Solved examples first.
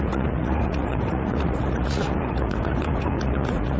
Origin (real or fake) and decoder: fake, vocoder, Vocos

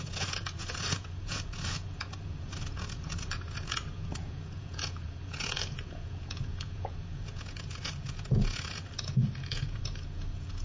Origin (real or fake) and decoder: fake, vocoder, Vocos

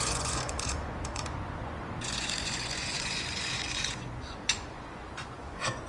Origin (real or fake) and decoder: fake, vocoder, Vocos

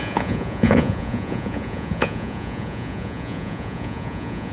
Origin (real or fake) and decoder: fake, vocoder, Vocos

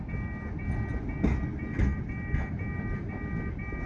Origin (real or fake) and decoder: real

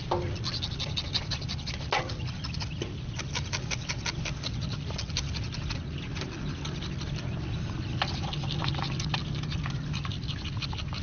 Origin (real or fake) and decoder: real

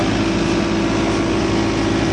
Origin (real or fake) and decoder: real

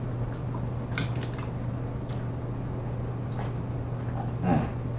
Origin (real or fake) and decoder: real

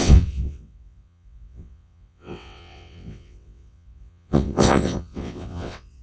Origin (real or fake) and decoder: fake, vocoder, WaveNeXt